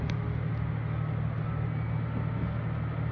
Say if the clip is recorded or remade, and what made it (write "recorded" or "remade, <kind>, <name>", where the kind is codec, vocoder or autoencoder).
recorded